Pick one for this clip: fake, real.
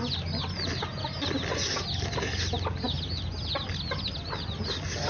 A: real